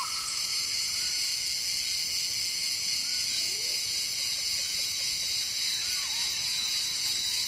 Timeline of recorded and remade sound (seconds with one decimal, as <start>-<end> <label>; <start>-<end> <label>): 0.0-1.3 remade; 1.3-2.5 recorded; 2.5-7.5 remade